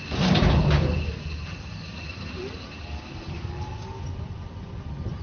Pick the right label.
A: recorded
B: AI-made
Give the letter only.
A